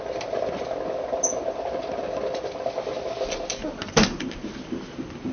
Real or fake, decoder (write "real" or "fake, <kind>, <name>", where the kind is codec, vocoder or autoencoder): real